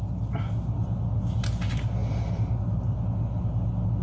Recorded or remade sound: recorded